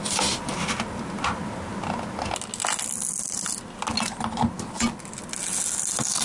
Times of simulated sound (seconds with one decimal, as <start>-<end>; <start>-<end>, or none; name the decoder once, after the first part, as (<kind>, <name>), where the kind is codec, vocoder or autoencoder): none